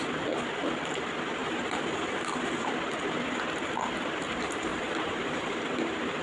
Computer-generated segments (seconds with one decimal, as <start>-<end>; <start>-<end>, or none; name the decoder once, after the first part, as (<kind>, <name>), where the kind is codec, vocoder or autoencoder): 4.7-6.2 (vocoder, BigVGAN v2)